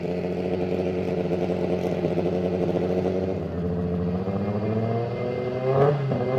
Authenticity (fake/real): real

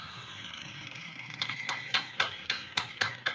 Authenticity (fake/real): fake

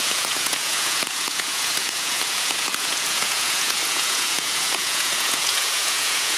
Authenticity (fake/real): fake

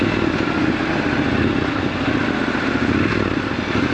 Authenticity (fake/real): real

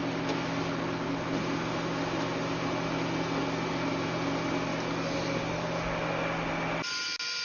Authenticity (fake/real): real